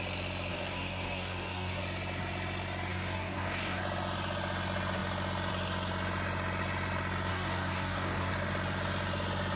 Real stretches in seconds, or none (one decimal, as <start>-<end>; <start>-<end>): 0.0-0.5; 1.8-2.9; 3.8-7.3; 8.3-9.6